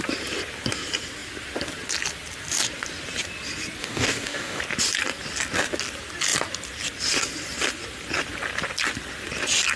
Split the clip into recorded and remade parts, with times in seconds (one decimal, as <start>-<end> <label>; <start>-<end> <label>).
0.0-3.8 recorded; 3.8-4.6 remade; 4.6-9.8 recorded

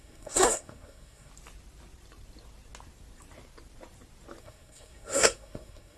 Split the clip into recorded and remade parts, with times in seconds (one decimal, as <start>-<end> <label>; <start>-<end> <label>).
0.0-1.3 remade; 1.3-4.4 recorded; 4.4-6.0 remade

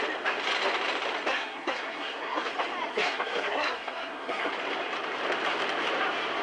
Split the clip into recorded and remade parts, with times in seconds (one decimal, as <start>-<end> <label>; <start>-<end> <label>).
0.0-1.3 recorded; 1.3-2.5 remade; 2.5-2.9 recorded; 2.9-4.5 remade; 4.5-6.4 recorded

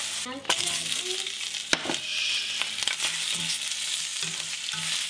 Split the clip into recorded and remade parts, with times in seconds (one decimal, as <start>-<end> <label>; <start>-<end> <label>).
0.0-2.1 recorded; 2.1-2.7 remade; 2.7-4.1 recorded; 4.1-5.1 remade

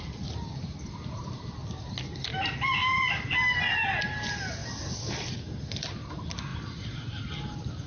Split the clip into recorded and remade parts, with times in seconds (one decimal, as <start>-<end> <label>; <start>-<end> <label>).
0.0-7.9 recorded

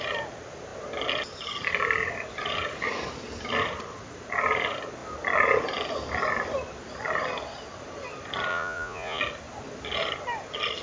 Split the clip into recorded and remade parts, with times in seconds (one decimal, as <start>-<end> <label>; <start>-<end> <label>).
0.0-8.5 recorded; 8.5-9.2 remade; 9.2-10.8 recorded